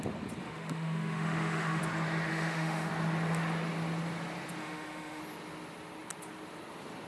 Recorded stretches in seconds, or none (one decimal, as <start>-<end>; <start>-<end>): 0.0-0.4; 1.8-2.3; 2.9-4.6; 5.2-7.1